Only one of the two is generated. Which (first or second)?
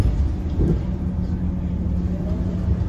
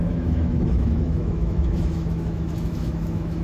second